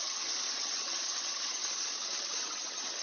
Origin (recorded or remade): remade